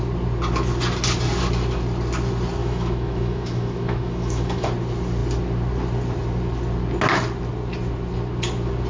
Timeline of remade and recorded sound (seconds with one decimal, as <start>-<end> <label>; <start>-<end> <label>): 0.0-2.6 recorded; 2.6-4.7 remade; 4.7-8.9 recorded